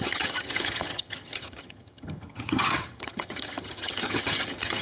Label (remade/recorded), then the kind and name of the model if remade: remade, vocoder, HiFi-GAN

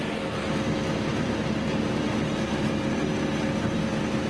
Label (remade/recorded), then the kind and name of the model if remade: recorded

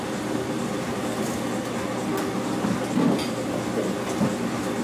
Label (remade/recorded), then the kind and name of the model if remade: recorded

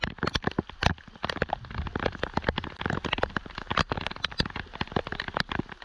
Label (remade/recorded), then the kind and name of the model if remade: recorded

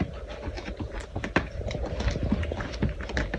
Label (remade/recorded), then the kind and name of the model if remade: recorded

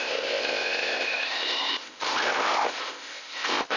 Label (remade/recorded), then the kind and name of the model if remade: remade, codec, ZipCodec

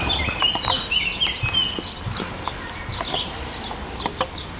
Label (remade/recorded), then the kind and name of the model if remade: recorded